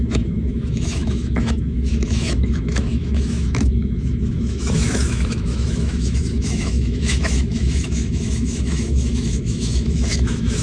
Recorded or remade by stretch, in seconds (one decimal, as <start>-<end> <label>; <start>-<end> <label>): 0.0-10.6 remade